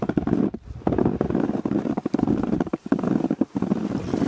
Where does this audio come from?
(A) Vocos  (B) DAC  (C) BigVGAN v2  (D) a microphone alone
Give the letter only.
D